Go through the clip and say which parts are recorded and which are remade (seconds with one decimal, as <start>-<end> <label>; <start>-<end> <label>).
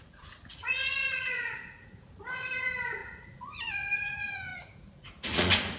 0.0-5.8 remade